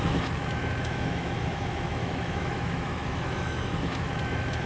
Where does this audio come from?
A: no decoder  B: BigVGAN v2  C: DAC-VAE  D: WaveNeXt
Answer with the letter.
C